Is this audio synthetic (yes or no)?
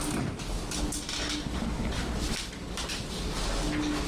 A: no